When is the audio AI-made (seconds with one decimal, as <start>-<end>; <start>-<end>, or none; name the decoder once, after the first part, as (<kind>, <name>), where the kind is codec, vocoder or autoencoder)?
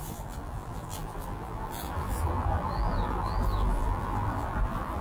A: 0.0-5.0 (vocoder, BigVGAN v2)